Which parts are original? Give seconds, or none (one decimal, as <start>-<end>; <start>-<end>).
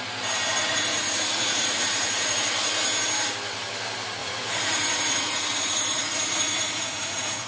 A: 0.0-0.6; 2.5-4.2